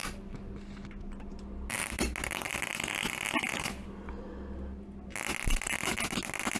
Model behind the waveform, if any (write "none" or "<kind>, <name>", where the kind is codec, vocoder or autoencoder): none